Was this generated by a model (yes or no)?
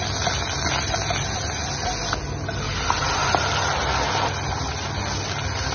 no